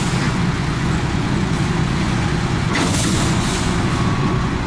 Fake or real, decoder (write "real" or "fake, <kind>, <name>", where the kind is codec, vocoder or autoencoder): fake, vocoder, Vocos